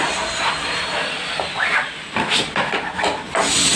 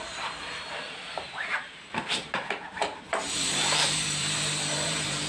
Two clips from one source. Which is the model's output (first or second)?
second